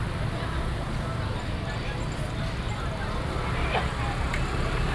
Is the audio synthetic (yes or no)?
no